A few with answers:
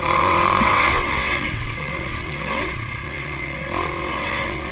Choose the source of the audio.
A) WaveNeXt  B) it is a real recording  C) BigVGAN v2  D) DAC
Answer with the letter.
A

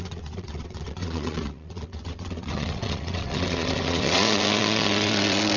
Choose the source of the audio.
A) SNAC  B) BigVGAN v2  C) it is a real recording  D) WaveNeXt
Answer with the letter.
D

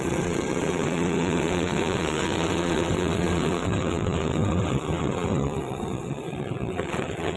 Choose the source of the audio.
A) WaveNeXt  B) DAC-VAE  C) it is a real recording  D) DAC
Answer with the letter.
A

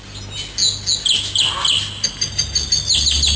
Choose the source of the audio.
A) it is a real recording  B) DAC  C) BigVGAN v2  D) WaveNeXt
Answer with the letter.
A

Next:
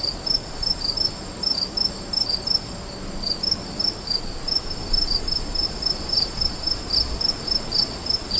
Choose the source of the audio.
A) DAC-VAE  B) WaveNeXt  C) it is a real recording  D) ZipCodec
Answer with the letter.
C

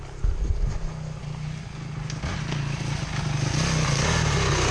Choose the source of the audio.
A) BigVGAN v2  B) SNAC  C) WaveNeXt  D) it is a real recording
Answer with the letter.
D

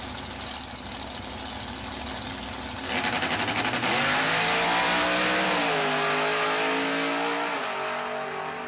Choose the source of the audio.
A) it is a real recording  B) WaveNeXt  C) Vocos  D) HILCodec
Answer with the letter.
A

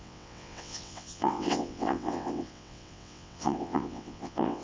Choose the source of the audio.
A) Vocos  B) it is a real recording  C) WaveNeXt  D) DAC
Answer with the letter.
C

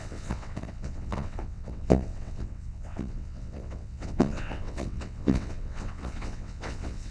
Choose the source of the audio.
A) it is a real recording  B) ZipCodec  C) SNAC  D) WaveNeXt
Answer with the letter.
D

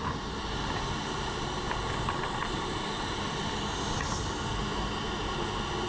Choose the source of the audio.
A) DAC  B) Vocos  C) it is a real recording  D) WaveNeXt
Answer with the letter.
C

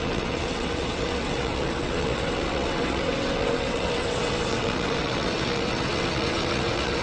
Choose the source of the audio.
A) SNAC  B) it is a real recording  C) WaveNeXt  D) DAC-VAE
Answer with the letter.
C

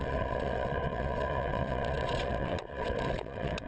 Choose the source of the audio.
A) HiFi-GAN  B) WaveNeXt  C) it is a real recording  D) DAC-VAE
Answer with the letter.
B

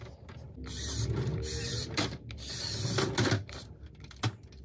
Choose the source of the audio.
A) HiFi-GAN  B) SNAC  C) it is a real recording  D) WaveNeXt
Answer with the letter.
C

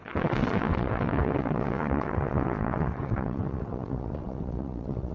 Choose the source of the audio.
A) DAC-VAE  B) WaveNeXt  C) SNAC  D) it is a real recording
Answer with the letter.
B